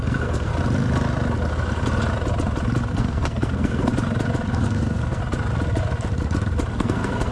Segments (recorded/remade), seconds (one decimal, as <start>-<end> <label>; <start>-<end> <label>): 0.0-0.5 remade; 0.5-2.9 recorded; 2.9-3.9 remade; 3.9-4.5 recorded; 4.5-5.2 remade; 5.2-6.7 recorded; 6.7-7.3 remade